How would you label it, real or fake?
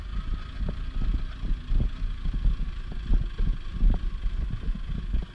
real